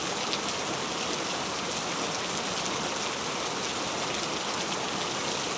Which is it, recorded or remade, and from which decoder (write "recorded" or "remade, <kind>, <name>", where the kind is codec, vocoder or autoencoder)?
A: recorded